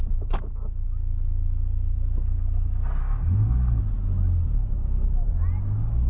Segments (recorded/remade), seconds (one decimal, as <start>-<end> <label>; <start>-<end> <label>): 0.0-3.0 recorded; 3.0-3.8 remade; 3.8-6.1 recorded